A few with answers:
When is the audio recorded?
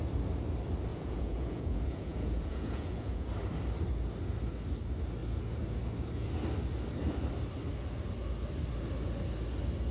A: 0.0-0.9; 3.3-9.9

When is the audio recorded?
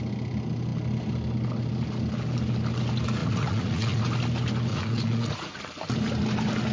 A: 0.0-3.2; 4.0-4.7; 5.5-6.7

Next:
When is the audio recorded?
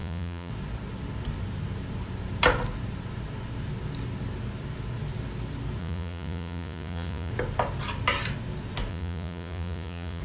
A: 0.5-5.8; 7.3-8.9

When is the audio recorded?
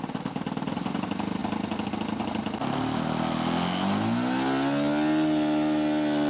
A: 0.0-6.3